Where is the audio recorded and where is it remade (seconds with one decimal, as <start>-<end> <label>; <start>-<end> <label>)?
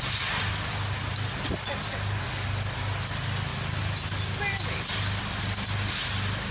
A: 0.0-6.5 recorded